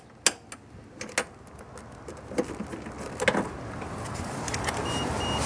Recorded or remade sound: recorded